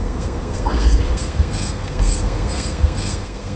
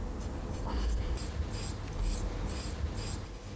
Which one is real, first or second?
second